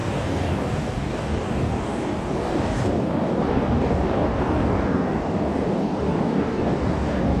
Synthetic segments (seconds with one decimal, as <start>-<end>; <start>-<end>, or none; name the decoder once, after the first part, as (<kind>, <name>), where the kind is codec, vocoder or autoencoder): 0.0-7.4 (codec, DAC)